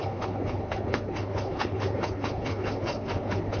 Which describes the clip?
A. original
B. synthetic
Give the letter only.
B